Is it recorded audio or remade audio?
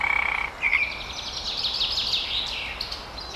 recorded